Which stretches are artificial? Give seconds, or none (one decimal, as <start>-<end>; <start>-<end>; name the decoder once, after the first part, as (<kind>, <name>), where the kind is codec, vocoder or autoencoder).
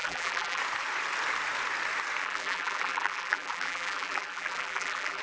0.0-0.6 (vocoder, BigVGAN v2); 2.2-5.2